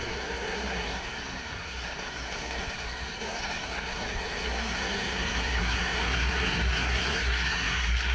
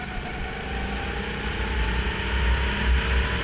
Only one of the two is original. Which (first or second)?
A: second